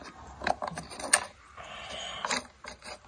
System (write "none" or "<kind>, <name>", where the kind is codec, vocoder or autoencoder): none